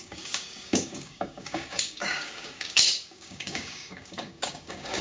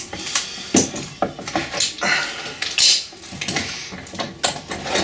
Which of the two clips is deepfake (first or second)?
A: first